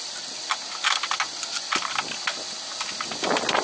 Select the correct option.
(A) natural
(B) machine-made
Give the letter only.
A